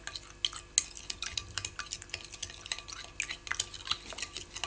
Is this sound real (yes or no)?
yes